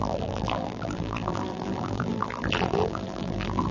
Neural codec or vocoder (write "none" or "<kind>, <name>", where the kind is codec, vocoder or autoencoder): vocoder, BigVGAN v2